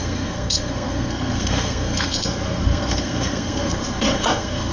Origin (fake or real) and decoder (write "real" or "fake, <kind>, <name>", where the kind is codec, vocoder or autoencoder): fake, codec, SNAC